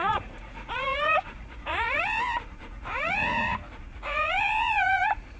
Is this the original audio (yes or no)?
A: no